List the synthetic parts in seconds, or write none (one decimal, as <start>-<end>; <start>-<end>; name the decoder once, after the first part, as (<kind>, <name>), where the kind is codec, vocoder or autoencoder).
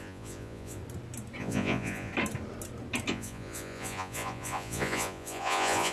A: 0.0-0.8 (vocoder, Vocos); 1.4-2.1; 3.1-5.9